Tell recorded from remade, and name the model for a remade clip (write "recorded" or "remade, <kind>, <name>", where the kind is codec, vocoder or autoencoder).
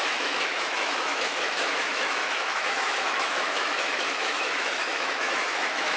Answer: remade, autoencoder, DAC-VAE